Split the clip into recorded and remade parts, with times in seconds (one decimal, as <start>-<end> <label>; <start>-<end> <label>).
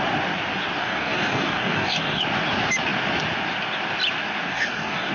0.0-0.8 recorded; 0.8-2.2 remade; 2.2-4.5 recorded; 4.5-5.1 remade